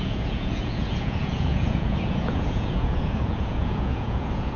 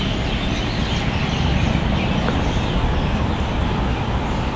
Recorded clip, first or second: second